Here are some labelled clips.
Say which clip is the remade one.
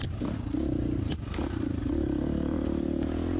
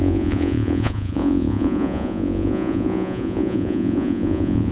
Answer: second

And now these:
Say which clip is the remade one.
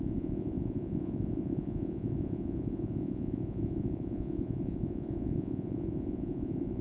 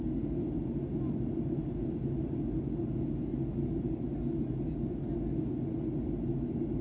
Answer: first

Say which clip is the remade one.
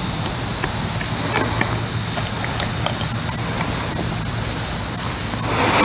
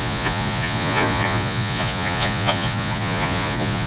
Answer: second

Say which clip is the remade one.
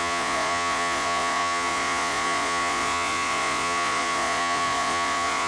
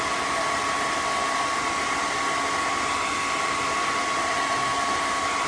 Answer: first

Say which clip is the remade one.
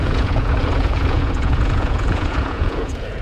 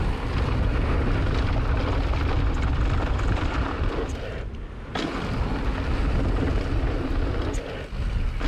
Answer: first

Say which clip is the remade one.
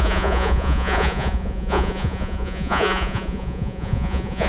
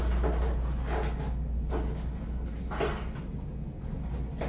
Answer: first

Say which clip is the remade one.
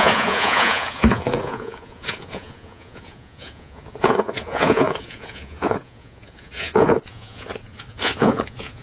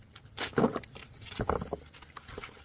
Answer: first